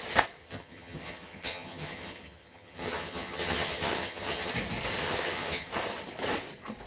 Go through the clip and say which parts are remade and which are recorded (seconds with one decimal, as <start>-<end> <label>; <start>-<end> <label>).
0.0-0.4 recorded; 0.4-4.5 remade; 4.5-5.0 recorded; 5.0-5.7 remade; 5.7-6.9 recorded